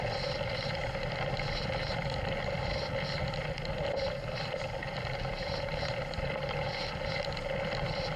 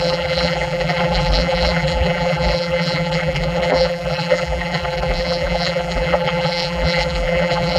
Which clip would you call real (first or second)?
first